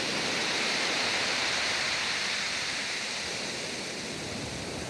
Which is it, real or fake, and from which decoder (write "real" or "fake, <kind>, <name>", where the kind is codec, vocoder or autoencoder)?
fake, vocoder, BigVGAN v2